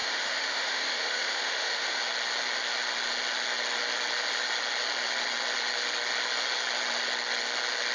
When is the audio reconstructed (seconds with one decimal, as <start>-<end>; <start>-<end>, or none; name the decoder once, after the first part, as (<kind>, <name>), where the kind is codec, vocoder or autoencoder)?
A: 0.0-2.0 (autoencoder, DAC-VAE)